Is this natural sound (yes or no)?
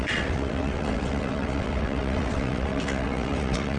no